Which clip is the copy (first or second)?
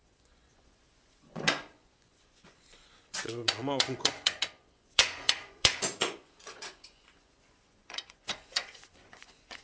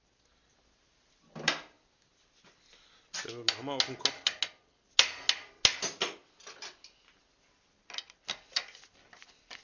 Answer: first